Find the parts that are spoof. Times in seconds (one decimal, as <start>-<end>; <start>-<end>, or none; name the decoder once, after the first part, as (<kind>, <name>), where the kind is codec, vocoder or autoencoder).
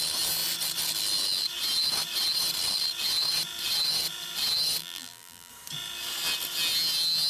4.8-5.5 (vocoder, BigVGAN v2)